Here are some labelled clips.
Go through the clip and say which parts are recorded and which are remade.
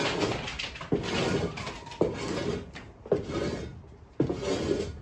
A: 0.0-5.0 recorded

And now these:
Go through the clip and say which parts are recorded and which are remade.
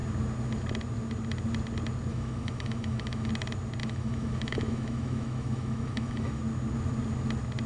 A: 0.0-2.1 recorded; 2.1-3.3 remade; 3.3-3.8 recorded; 3.8-6.4 remade; 6.4-7.7 recorded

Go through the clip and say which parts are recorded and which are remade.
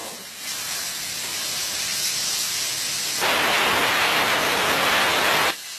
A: 0.0-5.8 recorded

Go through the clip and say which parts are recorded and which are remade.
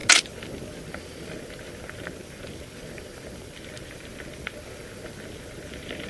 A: 0.0-6.1 recorded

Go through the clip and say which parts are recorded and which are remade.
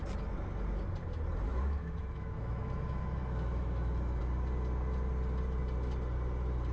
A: 0.0-1.5 recorded; 1.5-4.2 remade; 4.2-6.7 recorded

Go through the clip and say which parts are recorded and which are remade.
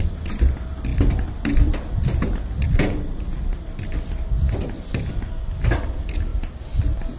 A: 0.0-7.2 recorded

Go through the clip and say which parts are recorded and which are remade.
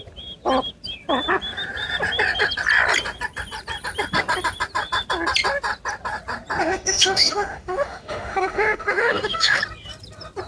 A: 0.0-6.6 recorded; 6.6-9.6 remade; 9.6-10.5 recorded